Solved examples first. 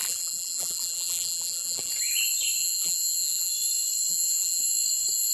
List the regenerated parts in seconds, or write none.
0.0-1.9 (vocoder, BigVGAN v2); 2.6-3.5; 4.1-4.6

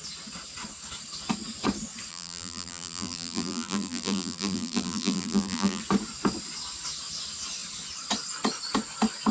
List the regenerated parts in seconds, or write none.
2.1-5.8 (vocoder, BigVGAN v2)

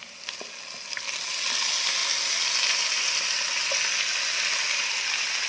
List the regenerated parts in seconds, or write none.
none